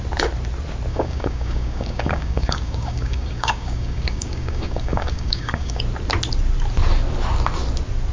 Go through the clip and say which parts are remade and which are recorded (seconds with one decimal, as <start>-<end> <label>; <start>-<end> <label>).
0.0-0.9 recorded; 0.9-5.8 remade; 5.8-8.1 recorded